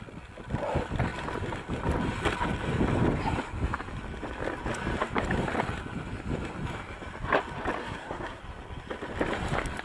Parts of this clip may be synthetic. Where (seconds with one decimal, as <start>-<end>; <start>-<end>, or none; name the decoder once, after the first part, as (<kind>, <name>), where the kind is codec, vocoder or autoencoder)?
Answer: 7.8-8.4 (codec, SNAC)